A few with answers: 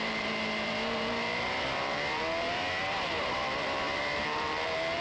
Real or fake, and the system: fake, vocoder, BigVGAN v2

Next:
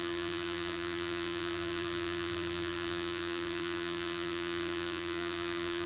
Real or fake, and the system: fake, vocoder, BigVGAN v2